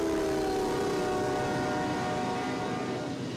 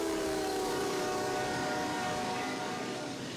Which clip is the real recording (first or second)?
first